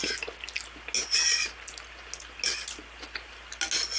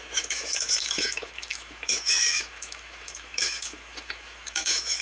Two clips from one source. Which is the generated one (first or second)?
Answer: second